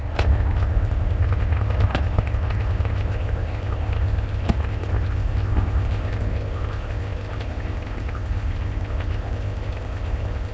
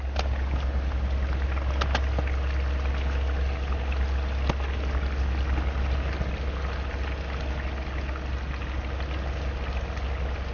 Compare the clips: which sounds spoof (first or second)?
first